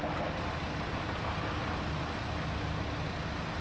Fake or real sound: real